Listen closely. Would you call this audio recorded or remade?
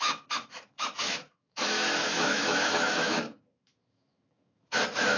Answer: remade